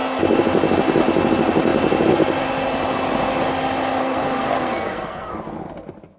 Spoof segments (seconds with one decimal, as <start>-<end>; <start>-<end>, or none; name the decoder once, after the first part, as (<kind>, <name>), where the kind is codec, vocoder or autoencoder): 4.0-5.4 (codec, SNAC)